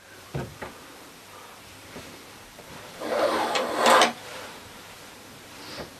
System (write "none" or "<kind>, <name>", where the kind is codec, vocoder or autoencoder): vocoder, BigVGAN v2